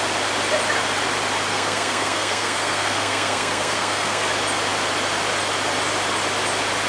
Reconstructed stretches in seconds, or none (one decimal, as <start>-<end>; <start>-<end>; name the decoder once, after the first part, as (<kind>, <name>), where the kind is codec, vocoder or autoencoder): 1.5-4.3 (codec, SNAC)